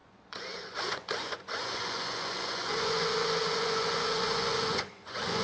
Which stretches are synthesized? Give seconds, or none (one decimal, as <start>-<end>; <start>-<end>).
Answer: 0.0-5.4